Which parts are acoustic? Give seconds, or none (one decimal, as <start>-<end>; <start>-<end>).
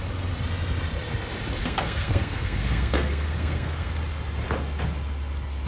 0.0-1.6; 3.9-5.7